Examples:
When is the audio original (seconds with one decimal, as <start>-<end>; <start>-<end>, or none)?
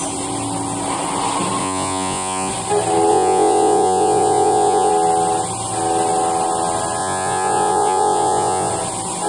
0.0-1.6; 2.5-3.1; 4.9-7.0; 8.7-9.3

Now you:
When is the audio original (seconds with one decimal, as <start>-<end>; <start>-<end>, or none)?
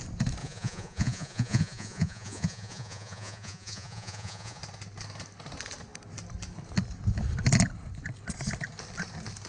0.0-0.4; 4.6-9.5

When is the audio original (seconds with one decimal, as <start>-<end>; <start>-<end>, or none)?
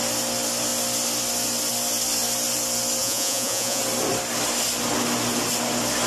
0.0-3.0; 3.8-6.1